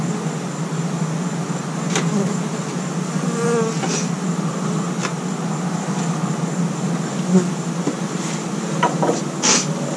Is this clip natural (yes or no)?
yes